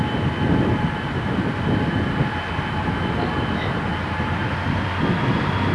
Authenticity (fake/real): real